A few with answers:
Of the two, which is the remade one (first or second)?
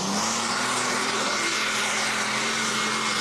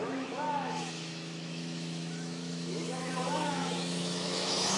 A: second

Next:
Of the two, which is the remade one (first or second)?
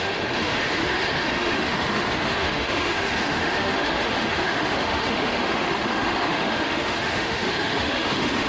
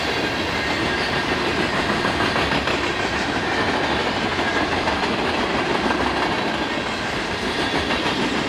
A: first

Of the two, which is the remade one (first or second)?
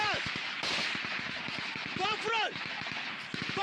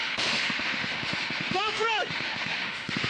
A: second